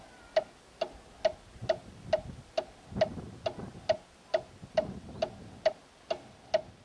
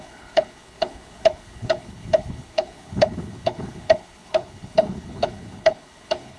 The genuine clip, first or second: first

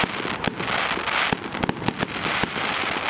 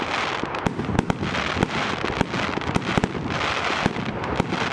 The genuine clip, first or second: first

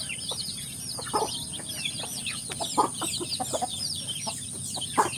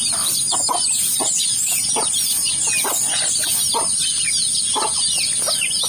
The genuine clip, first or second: second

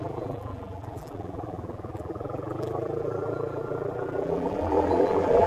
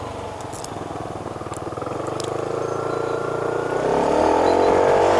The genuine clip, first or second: second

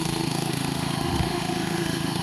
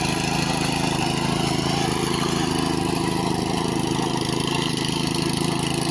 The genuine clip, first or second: second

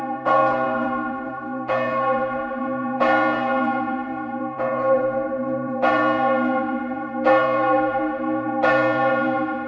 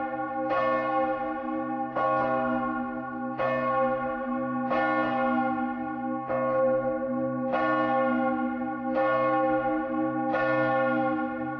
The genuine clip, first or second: second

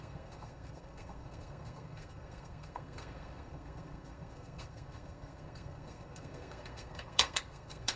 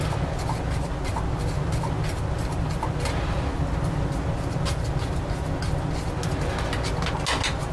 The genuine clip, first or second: second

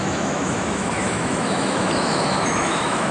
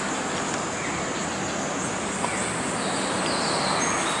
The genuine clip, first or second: second